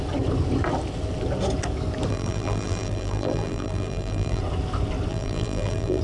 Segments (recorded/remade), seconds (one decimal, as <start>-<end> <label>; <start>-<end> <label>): 0.0-2.1 recorded; 2.1-4.4 remade; 4.4-5.1 recorded; 5.1-6.0 remade